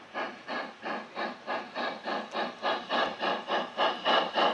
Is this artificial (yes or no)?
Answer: no